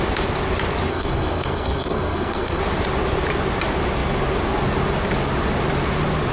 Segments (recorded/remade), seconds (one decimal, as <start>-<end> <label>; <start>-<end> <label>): 0.0-0.9 recorded; 0.9-2.6 remade; 2.6-6.3 recorded